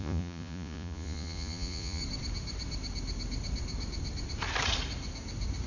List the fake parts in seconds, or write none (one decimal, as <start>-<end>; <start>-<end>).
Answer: 0.0-2.0